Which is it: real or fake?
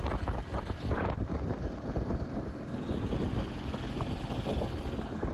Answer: real